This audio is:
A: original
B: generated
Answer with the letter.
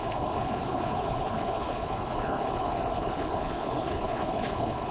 B